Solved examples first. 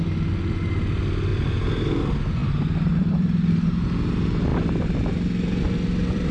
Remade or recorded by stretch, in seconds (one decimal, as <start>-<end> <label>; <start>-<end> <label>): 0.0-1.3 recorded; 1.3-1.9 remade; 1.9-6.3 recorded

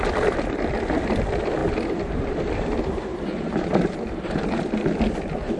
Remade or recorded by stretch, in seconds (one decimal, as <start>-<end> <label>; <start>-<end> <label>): 0.0-3.1 recorded; 3.1-4.6 remade; 4.6-5.6 recorded

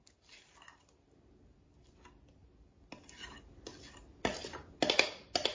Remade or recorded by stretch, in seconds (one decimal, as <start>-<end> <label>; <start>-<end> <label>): 0.0-5.5 recorded

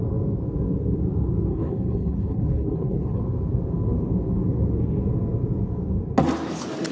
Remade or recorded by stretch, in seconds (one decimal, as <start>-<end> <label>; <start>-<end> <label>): 0.0-1.5 recorded; 1.5-3.2 remade; 3.2-6.9 recorded

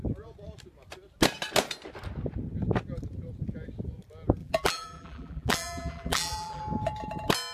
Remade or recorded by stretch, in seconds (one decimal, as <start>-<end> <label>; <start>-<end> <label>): 0.0-4.4 recorded; 4.4-6.6 remade; 6.6-7.5 recorded